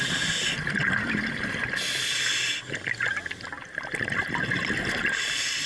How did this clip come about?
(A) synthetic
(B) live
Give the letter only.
B